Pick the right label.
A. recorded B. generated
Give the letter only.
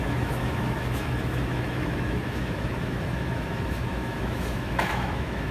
B